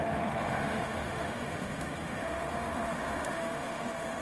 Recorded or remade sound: remade